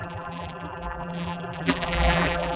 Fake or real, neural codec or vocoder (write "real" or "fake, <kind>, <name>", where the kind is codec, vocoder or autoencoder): fake, vocoder, BigVGAN v2